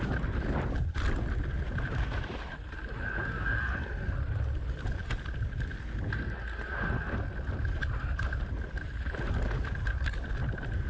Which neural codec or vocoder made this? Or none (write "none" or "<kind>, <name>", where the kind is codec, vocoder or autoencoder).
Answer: none